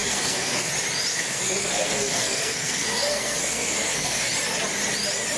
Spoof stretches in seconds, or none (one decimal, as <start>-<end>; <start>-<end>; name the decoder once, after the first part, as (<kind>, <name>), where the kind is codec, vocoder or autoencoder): 0.0-0.7 (codec, SNAC); 1.1-4.3